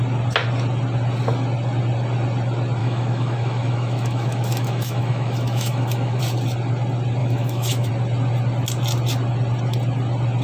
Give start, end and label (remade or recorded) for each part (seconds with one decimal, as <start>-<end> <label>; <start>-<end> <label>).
0.0-2.8 recorded; 2.8-6.2 remade; 6.2-7.2 recorded; 7.2-7.9 remade; 7.9-10.4 recorded